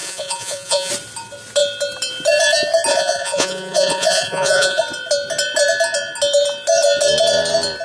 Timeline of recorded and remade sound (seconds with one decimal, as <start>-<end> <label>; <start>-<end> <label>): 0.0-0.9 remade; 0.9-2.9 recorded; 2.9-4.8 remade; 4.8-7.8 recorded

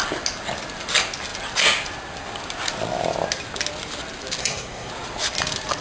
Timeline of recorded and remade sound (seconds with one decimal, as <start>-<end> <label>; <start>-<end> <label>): 0.0-4.4 recorded; 4.4-4.9 remade; 4.9-5.8 recorded

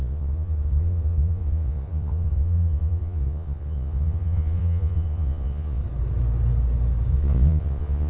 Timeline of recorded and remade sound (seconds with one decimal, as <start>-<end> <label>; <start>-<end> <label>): 0.0-5.8 remade; 5.8-7.1 recorded; 7.1-8.1 remade

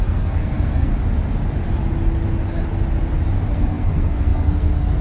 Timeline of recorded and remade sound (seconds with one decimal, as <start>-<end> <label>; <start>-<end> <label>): 0.0-0.9 remade; 0.9-3.5 recorded; 3.5-5.0 remade